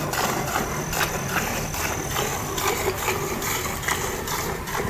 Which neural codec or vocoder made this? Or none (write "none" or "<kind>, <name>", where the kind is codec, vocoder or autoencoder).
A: none